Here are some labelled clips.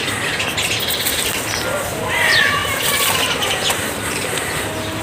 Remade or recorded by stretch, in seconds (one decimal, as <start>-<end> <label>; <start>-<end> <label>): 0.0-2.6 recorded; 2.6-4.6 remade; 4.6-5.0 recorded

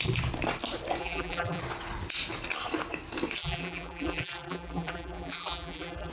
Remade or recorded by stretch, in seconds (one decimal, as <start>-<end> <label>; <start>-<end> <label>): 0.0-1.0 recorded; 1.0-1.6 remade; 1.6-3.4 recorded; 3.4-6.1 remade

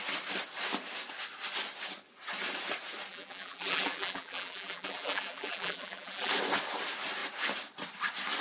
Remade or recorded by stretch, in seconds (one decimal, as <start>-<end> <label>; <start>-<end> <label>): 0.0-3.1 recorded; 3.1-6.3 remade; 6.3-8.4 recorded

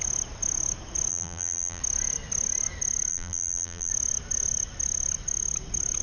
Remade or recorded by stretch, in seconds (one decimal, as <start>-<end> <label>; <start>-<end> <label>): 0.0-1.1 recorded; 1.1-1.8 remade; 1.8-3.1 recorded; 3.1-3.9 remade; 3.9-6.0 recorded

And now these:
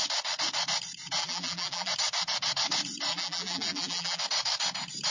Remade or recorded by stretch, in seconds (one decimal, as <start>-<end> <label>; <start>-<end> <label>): 0.0-1.2 recorded; 1.2-1.9 remade; 1.9-3.1 recorded; 3.1-4.2 remade; 4.2-5.1 recorded

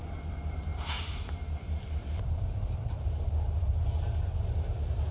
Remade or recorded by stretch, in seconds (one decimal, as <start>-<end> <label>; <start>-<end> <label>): 0.0-0.7 recorded; 0.7-3.8 remade; 3.8-5.1 recorded

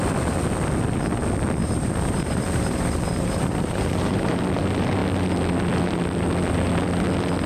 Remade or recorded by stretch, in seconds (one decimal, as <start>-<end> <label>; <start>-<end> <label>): 0.0-1.6 recorded; 1.6-4.4 remade; 4.4-7.5 recorded